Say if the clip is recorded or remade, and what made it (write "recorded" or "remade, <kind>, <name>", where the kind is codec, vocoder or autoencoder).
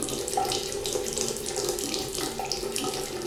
recorded